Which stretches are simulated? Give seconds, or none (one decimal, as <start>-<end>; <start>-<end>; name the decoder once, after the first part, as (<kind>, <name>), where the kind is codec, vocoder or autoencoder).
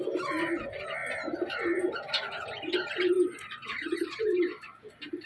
none